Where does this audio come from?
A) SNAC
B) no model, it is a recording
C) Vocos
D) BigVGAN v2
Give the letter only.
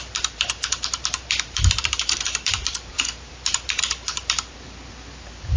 D